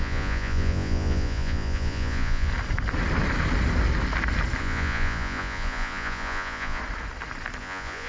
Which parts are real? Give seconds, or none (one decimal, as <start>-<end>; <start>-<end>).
2.5-4.6; 6.8-7.6